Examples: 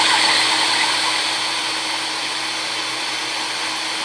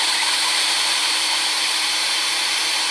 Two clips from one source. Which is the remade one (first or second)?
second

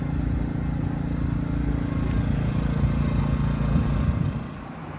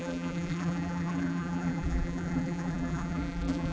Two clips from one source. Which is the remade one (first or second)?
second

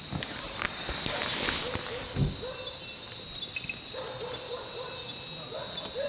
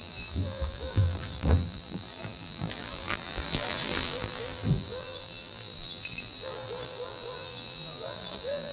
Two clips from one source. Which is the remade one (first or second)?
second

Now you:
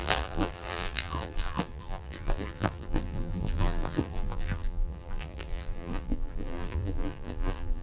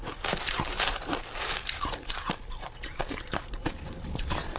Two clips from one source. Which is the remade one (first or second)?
first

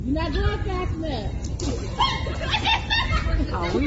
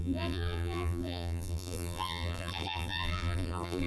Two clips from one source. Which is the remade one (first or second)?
second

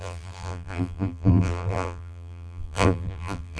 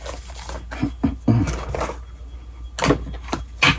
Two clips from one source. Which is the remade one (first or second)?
first